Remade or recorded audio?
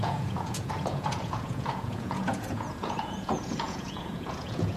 remade